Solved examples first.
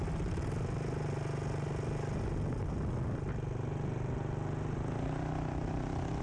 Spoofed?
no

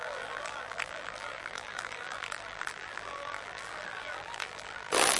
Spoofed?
yes